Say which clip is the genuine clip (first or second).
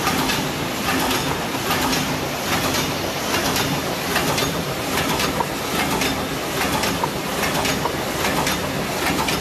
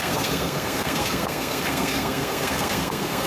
first